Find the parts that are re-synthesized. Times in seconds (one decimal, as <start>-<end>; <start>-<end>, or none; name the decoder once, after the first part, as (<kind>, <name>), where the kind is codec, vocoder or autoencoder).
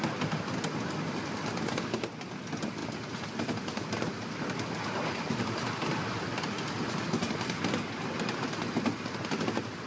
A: none